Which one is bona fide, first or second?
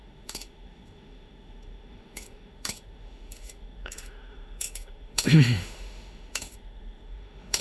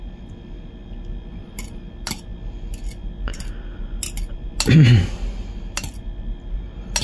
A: second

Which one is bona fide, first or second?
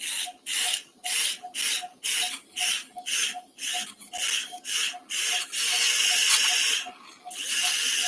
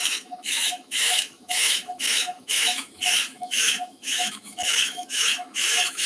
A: first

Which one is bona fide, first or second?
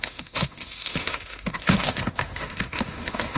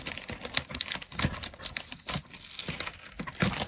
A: second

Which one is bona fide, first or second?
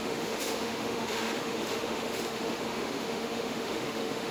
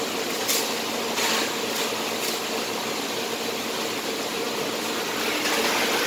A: second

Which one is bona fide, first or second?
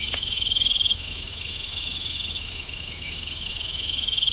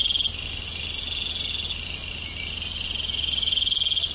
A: second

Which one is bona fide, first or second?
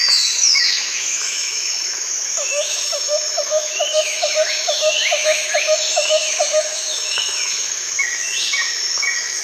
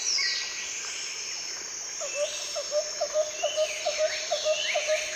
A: second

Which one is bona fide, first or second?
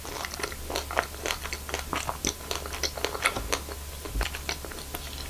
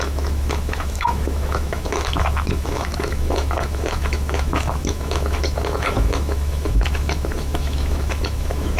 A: first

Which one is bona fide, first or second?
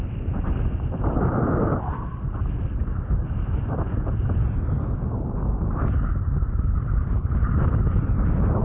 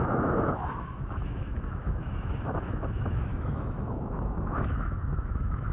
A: first